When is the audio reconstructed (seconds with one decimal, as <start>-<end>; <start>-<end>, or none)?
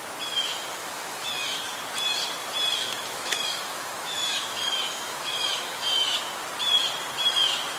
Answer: 0.8-1.6; 2.8-6.2